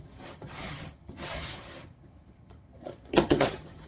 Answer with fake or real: fake